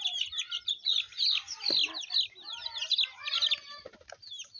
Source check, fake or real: real